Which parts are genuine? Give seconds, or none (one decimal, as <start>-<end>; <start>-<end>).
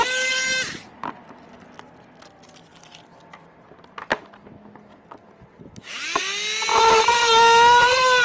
0.0-8.2